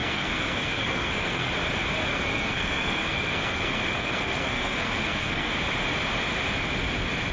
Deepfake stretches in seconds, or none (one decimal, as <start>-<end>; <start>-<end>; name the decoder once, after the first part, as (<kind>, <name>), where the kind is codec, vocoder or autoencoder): 0.0-1.5 (codec, SNAC); 2.1-5.5